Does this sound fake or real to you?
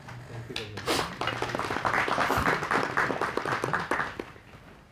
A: real